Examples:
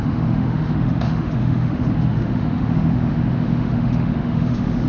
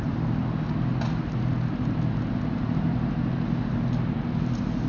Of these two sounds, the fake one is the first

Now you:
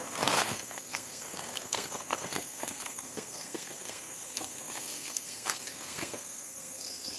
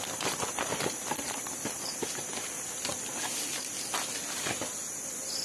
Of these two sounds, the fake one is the first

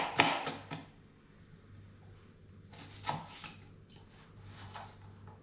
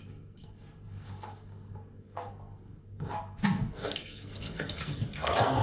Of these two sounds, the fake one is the second